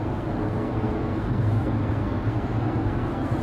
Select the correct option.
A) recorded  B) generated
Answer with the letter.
B